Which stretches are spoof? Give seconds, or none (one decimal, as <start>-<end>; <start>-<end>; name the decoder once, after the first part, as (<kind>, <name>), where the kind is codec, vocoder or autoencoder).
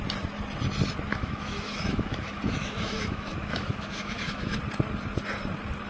1.1-4.6 (autoencoder, DAC-VAE)